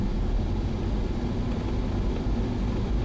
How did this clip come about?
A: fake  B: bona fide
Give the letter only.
B